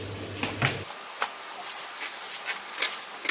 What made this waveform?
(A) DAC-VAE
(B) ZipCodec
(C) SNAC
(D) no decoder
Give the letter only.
D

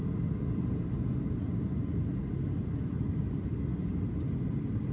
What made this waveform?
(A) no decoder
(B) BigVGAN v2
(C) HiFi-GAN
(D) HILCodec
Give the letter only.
A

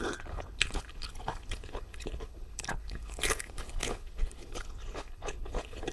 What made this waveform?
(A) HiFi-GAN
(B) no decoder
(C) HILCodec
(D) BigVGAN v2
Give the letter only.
C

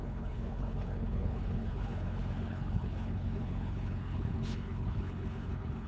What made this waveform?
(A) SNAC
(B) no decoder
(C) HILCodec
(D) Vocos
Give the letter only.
C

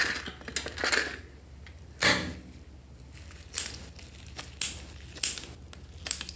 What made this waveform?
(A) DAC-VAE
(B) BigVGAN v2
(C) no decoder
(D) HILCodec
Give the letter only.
C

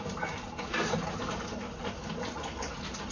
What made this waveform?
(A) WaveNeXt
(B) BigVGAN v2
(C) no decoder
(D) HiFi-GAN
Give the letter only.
C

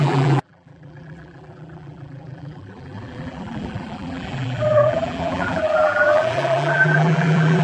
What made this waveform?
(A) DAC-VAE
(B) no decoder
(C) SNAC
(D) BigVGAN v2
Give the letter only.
D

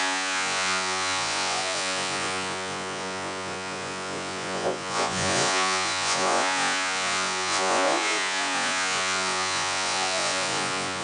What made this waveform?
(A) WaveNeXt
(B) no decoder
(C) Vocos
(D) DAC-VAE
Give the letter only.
C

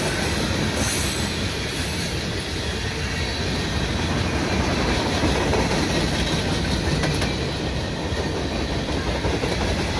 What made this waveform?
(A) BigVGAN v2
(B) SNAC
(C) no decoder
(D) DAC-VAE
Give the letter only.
C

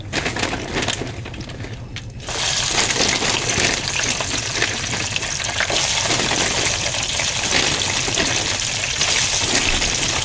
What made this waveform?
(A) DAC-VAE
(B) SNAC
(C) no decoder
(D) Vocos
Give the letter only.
C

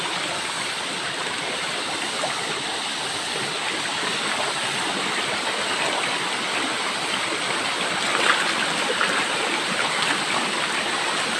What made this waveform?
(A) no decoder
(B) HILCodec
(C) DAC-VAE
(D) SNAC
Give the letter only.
A